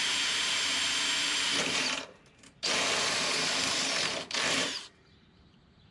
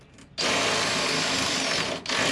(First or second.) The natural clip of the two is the second